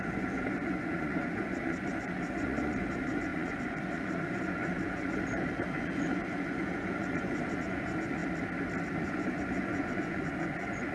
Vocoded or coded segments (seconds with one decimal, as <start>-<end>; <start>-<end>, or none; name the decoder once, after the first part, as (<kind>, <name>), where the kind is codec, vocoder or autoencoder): 0.0-8.2 (vocoder, Vocos); 9.0-10.9